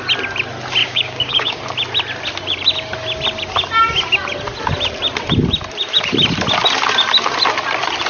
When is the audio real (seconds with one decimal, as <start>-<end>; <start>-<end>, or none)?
0.0-0.8; 1.6-8.1